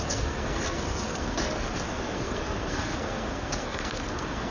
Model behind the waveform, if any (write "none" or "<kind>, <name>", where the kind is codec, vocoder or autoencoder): codec, SNAC